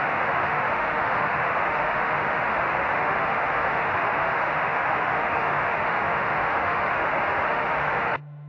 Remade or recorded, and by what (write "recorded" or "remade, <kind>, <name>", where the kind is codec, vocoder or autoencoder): remade, autoencoder, DAC-VAE